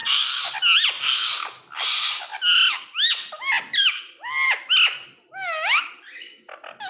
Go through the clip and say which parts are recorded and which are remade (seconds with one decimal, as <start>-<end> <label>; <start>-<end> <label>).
0.0-6.9 recorded